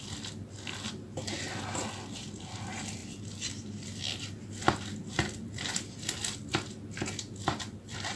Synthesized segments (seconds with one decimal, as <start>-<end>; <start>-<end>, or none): none